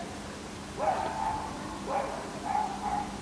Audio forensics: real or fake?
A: real